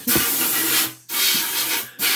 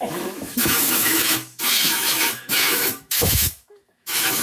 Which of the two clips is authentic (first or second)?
first